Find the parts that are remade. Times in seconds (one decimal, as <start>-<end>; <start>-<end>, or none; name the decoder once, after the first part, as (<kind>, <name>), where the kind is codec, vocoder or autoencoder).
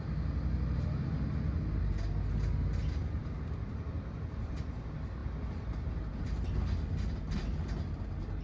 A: none